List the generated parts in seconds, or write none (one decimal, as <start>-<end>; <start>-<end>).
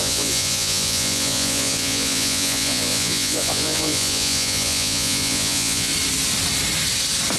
0.0-5.9